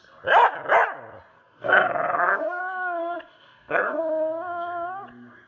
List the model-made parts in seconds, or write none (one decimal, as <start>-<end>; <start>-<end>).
1.3-2.6; 3.0-4.0

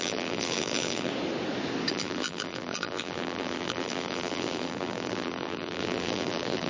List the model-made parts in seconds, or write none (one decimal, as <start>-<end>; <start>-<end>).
0.0-1.1; 1.9-6.7